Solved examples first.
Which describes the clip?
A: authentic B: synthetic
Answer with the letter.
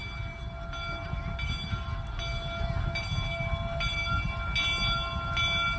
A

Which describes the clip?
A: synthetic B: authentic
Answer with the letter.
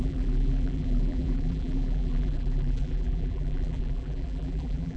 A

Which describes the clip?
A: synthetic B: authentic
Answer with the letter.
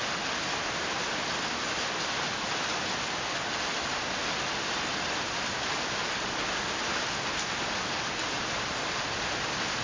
B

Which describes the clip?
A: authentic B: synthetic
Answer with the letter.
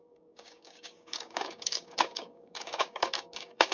B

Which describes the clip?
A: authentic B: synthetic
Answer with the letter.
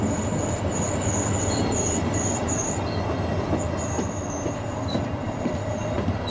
A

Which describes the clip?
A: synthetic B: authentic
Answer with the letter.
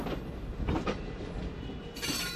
B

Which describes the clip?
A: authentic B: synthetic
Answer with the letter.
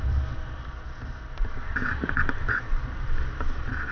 A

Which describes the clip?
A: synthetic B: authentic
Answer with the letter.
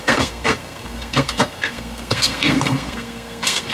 A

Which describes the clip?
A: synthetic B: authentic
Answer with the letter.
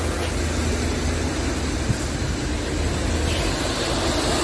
B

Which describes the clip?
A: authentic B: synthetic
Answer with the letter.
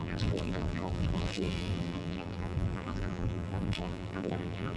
B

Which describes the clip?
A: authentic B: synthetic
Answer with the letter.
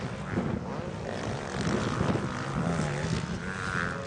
A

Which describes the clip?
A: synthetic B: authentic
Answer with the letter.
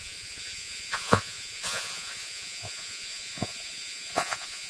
A